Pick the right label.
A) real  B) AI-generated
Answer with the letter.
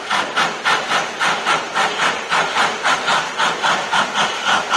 A